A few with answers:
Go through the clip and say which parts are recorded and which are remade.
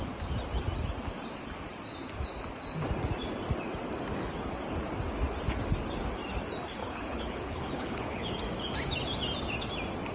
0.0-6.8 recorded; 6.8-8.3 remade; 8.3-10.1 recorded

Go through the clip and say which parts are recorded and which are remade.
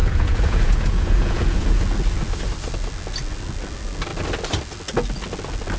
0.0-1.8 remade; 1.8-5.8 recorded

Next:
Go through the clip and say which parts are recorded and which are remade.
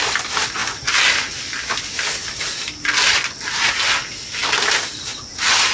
0.0-5.7 recorded